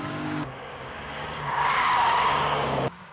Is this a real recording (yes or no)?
no